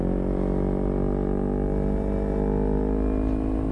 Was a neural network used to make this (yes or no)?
no